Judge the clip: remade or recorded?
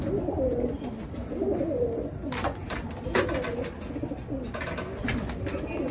recorded